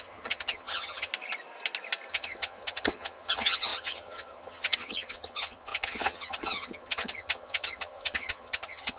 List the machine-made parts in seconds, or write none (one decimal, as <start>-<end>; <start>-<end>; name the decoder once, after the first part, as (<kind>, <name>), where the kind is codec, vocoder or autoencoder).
0.0-1.1 (vocoder, HiFi-GAN); 2.1-9.0